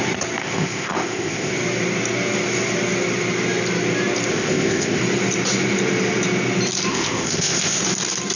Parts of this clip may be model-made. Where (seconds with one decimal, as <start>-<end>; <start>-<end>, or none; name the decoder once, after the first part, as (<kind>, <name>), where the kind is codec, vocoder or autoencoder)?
0.4-1.5 (codec, ZipCodec); 4.3-5.0; 6.9-7.8

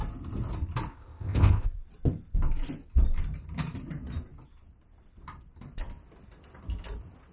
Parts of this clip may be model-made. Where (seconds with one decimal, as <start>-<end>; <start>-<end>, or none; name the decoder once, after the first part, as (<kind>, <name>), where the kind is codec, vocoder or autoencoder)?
0.9-1.8 (codec, ZipCodec)